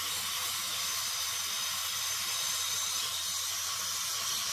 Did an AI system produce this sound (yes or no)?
no